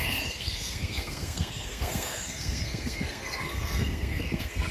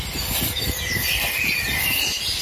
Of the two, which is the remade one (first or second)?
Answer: first